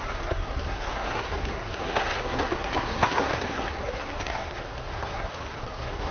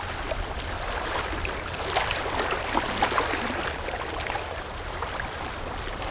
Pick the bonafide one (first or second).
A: second